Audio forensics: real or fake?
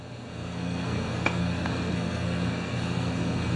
fake